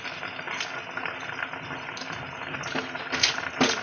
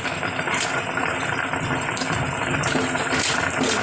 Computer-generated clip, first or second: second